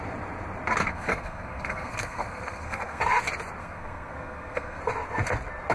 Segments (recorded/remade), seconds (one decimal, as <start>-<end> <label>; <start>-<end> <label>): 0.0-0.9 recorded; 0.9-3.0 remade; 3.0-3.6 recorded; 3.6-4.8 remade; 4.8-5.7 recorded